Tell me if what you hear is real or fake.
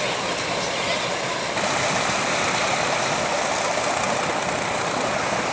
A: real